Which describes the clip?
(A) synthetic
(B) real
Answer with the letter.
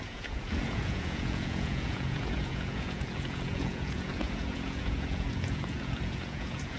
A